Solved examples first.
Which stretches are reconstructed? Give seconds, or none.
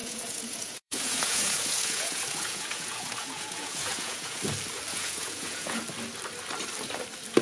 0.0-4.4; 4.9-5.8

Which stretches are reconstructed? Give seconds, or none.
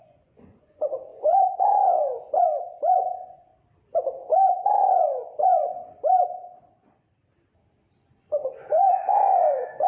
0.0-3.5; 4.6-5.8; 8.2-9.9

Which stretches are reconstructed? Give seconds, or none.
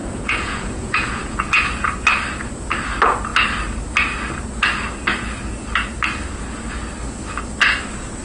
0.0-1.6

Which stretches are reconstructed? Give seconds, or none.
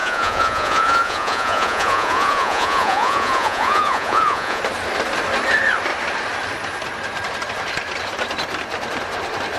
0.0-4.6